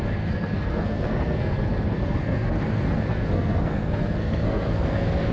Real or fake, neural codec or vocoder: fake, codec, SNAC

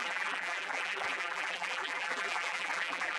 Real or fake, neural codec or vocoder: fake, vocoder, BigVGAN v2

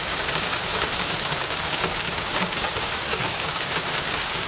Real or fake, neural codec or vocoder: fake, codec, DAC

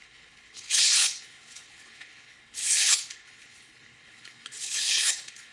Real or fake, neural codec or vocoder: fake, codec, HILCodec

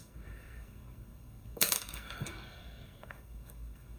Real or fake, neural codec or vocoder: fake, codec, SNAC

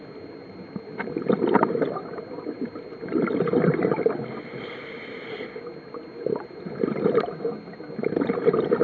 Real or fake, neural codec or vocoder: real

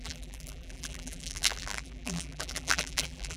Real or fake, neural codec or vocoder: fake, vocoder, BigVGAN v2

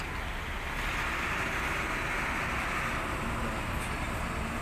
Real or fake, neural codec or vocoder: real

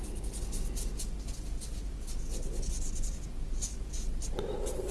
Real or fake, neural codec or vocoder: real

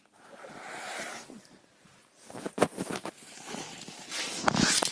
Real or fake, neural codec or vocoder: real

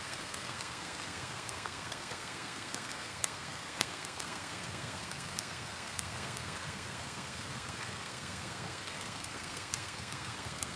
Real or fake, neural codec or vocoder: fake, codec, SNAC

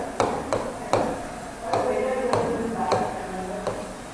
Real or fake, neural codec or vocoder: real